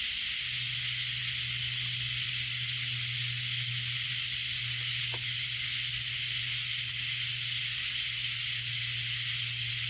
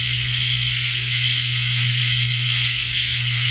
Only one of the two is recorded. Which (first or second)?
first